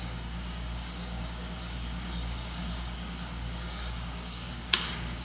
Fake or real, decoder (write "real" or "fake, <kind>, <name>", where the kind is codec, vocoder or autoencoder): fake, codec, DAC